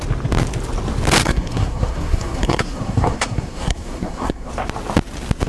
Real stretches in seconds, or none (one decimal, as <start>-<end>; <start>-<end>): 0.0-1.2; 4.5-5.5